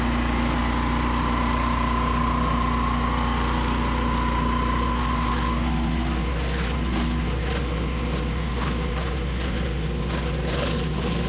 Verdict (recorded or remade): recorded